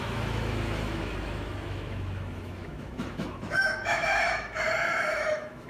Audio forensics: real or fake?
fake